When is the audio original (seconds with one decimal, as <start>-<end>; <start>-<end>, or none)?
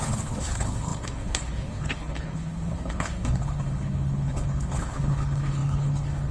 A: none